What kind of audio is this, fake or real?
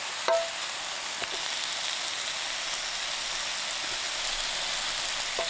real